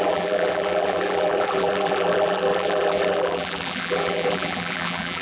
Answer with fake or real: fake